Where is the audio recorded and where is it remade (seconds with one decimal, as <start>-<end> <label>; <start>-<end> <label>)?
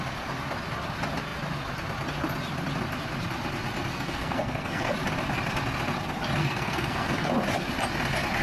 0.0-3.9 recorded; 3.9-4.9 remade; 4.9-6.4 recorded; 6.4-7.3 remade; 7.3-8.4 recorded